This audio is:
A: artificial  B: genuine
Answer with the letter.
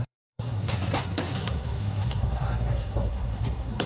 A